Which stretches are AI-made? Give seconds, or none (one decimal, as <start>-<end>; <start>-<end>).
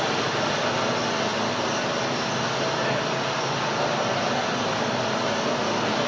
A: none